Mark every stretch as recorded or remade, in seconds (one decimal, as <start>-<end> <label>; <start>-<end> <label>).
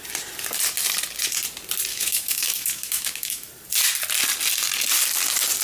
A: 0.0-1.9 recorded; 1.9-3.5 remade; 3.5-5.6 recorded